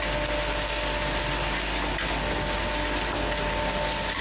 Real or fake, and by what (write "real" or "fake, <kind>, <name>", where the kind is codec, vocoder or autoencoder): real